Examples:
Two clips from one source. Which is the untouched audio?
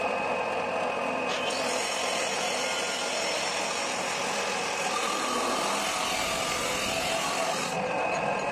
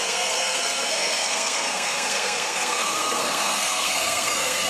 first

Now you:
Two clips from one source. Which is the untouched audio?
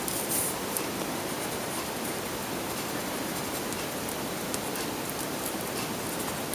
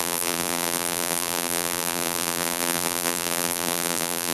first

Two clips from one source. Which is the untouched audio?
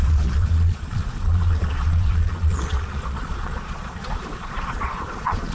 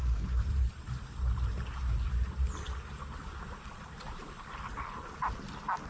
second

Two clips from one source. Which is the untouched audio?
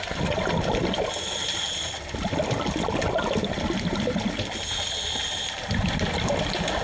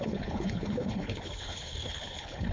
first